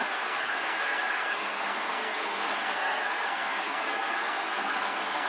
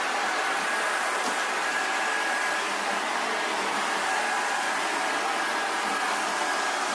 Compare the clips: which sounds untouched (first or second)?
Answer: second